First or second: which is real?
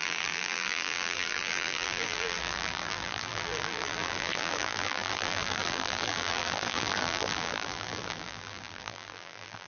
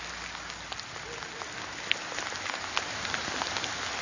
second